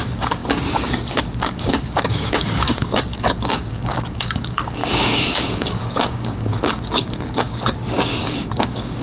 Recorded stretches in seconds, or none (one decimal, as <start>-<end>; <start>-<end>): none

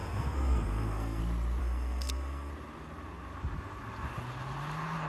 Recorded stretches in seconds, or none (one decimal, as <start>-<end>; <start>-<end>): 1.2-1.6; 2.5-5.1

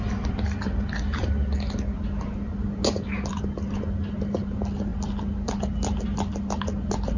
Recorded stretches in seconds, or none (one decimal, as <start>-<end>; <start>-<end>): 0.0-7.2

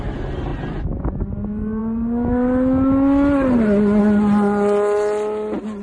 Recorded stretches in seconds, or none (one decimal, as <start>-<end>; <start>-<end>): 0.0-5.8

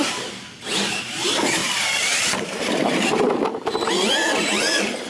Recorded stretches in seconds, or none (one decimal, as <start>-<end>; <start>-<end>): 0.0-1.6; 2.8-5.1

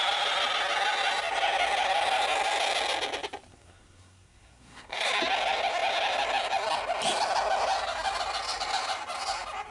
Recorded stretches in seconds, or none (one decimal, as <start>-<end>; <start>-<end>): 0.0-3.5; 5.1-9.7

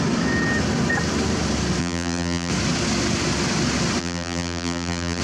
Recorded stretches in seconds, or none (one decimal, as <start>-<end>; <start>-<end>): 0.0-1.8; 2.5-4.0

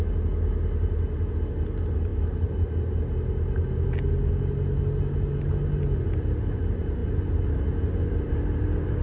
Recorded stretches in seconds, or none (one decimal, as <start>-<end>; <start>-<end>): 0.0-9.0